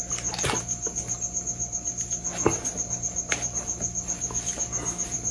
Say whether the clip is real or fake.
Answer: real